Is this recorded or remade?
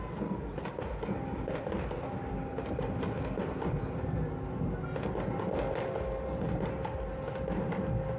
recorded